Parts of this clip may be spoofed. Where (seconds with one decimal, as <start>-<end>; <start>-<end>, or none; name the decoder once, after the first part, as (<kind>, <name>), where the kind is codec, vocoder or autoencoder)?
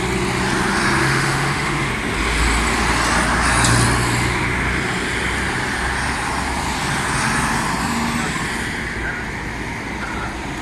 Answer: 1.0-1.9 (autoencoder, DAC-VAE)